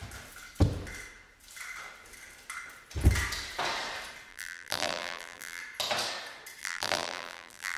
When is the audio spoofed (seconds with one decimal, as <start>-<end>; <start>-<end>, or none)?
4.3-5.6; 6.6-7.8